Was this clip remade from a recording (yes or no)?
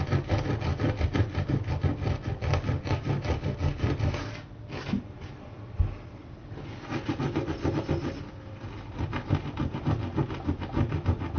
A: no